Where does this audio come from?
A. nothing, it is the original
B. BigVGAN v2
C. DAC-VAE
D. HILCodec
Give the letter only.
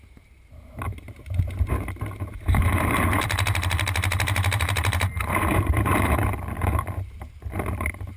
B